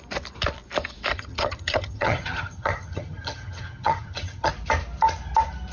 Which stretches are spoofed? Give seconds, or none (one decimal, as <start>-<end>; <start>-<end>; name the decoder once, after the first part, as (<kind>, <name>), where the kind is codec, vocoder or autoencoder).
1.1-4.5 (vocoder, HiFi-GAN)